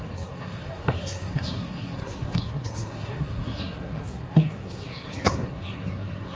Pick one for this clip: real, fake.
fake